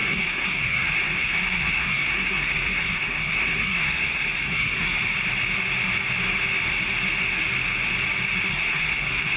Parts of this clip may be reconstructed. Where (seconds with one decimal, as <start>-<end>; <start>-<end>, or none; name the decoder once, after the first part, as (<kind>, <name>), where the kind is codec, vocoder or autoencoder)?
0.0-5.0 (codec, SNAC); 8.5-9.4